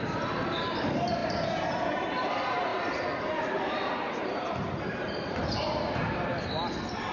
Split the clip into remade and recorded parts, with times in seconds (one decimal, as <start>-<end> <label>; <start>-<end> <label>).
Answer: 0.0-6.3 remade; 6.3-7.1 recorded

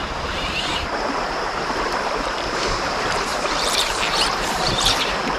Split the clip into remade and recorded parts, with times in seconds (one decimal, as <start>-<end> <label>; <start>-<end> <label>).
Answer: 0.0-0.7 remade; 0.7-1.3 recorded; 1.3-5.4 remade

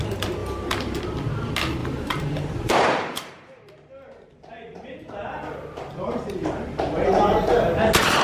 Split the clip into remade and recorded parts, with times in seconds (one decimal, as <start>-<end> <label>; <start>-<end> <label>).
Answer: 0.0-0.4 recorded; 0.4-1.0 remade; 1.0-1.8 recorded; 1.8-3.6 remade; 3.6-5.9 recorded; 5.9-7.5 remade; 7.5-8.2 recorded

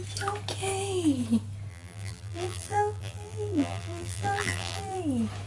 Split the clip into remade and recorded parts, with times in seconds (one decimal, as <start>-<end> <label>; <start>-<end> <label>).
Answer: 0.0-1.7 recorded; 1.7-5.0 remade; 5.0-5.5 recorded

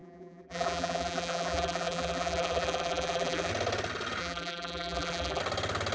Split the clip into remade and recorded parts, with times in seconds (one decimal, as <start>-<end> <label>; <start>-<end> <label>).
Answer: 0.0-3.5 remade; 3.5-4.2 recorded; 4.2-5.4 remade; 5.4-5.9 recorded

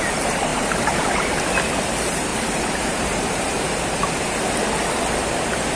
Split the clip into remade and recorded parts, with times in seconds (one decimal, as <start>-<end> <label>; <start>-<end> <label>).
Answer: 0.0-0.5 recorded; 0.5-1.0 remade; 1.0-2.3 recorded; 2.3-3.6 remade; 3.6-5.8 recorded

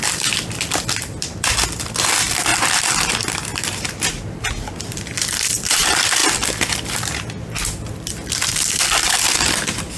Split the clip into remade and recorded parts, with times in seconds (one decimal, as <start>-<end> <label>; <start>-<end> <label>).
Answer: 0.0-2.5 remade; 2.5-3.9 recorded; 3.9-10.0 remade